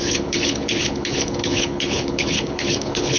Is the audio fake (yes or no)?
yes